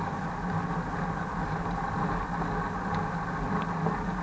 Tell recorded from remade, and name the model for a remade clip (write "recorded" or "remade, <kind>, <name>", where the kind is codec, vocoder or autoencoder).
recorded